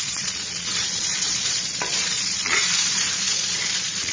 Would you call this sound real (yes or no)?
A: no